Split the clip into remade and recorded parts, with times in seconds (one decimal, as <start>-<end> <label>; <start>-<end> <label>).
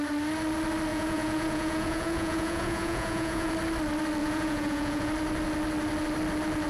0.0-0.9 recorded; 0.9-3.5 remade; 3.5-4.2 recorded; 4.2-5.1 remade; 5.1-6.7 recorded